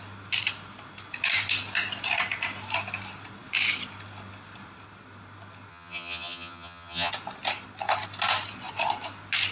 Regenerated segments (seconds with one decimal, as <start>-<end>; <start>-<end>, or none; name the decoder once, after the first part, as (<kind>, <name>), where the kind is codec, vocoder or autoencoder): 5.7-7.1 (vocoder, HiFi-GAN)